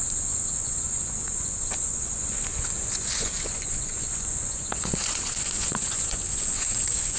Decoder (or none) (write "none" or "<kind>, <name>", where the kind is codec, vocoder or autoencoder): vocoder, Vocos